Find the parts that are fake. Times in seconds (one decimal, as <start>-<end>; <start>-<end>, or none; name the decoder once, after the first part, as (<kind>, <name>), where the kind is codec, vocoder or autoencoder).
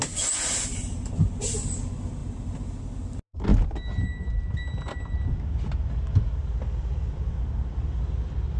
none